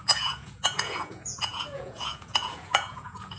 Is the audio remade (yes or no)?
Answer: yes